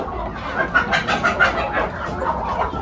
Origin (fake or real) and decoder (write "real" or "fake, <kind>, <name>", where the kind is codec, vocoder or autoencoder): real